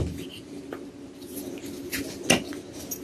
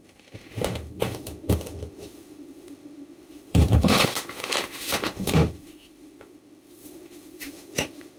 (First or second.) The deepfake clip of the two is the second